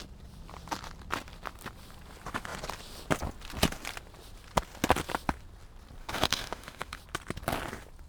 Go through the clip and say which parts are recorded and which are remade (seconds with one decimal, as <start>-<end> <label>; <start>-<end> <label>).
0.0-6.0 recorded; 6.0-7.0 remade; 7.0-8.1 recorded